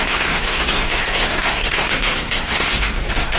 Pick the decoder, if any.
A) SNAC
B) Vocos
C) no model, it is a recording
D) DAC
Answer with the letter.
A